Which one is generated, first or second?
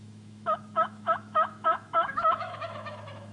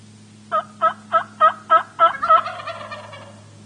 first